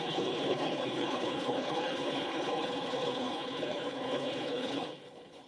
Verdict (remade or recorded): remade